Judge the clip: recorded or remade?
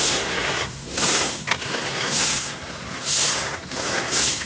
remade